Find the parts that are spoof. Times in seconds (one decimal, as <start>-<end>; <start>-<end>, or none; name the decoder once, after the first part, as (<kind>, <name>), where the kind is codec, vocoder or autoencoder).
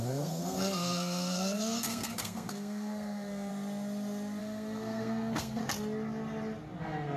0.0-3.5 (codec, SNAC); 4.4-5.6; 6.8-7.2